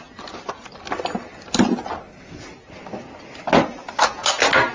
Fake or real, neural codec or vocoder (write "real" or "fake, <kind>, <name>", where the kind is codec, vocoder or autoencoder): real